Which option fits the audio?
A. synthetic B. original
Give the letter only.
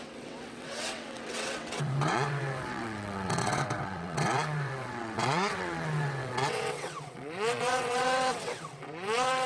A